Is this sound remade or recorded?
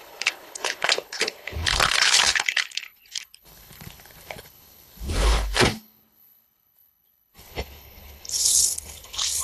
remade